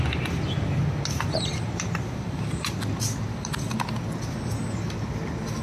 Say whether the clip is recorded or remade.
recorded